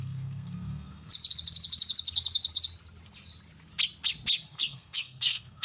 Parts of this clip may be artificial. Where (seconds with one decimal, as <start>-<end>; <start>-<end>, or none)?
0.0-1.1; 4.5-5.6

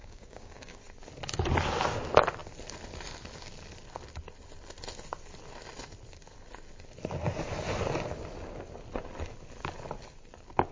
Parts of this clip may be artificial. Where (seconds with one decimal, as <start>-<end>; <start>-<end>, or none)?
0.0-0.8

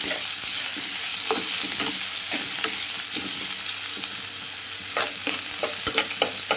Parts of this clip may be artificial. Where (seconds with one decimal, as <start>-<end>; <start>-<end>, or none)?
none

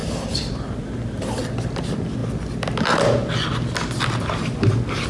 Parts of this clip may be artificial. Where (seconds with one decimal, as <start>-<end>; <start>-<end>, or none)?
none

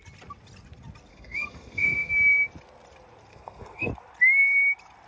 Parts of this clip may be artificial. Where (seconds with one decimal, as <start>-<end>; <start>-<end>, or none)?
1.1-2.1; 3.3-3.9

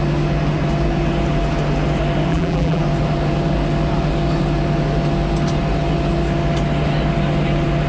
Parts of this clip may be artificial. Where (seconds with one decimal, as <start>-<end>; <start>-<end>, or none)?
2.3-2.8

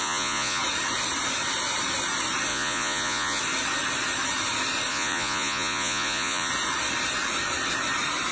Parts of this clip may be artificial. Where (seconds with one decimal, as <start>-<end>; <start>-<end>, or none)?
0.0-0.6; 2.5-3.4; 4.9-6.5

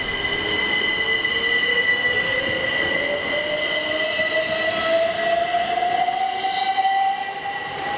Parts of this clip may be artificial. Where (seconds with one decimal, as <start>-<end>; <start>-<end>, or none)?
1.7-2.4